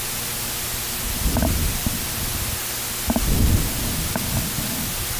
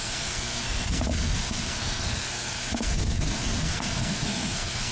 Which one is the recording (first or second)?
first